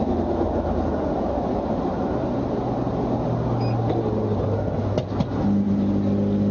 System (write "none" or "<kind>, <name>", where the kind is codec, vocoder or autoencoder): none